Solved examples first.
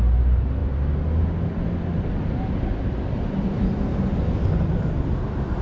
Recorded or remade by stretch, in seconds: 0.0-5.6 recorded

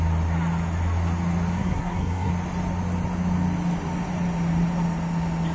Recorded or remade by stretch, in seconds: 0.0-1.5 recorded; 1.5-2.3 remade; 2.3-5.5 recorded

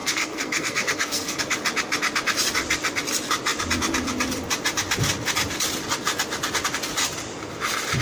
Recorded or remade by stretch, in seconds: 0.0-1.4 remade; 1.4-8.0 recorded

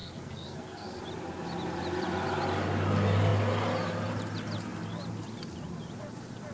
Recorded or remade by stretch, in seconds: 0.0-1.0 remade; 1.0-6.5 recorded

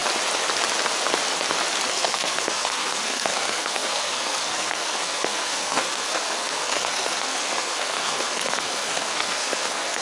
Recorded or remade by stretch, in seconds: 0.0-1.9 recorded; 1.9-10.0 remade